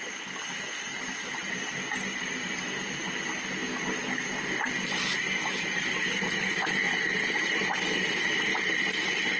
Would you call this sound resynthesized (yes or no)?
no